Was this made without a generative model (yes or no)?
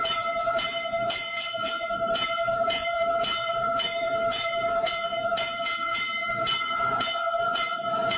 no